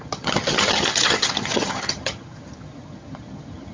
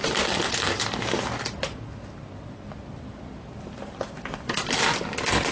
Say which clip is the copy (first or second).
first